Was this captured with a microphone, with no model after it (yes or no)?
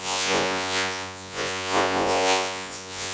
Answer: no